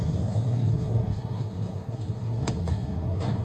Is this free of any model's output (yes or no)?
no